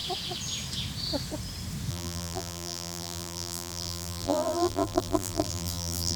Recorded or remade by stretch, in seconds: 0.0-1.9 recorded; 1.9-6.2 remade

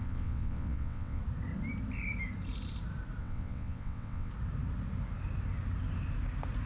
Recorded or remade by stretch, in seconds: 0.0-1.2 remade; 1.2-3.2 recorded; 3.2-4.3 remade; 4.3-6.7 recorded

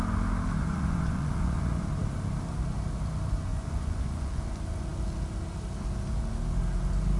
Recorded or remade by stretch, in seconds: 0.0-0.6 recorded; 0.6-1.8 remade; 1.8-3.5 recorded; 3.5-4.4 remade; 4.4-7.2 recorded

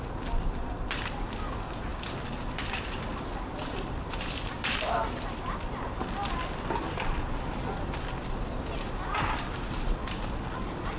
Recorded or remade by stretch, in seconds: 0.0-11.0 recorded

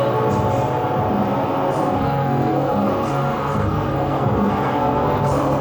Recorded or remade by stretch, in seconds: 0.0-1.8 recorded; 1.8-5.6 remade

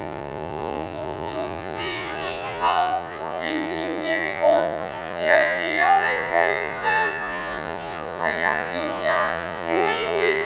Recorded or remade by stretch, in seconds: 0.0-10.4 remade

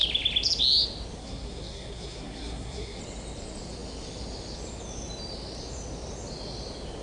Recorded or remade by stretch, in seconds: 0.0-1.2 recorded; 1.2-3.0 remade; 3.0-7.0 recorded